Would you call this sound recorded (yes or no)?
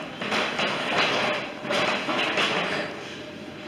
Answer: yes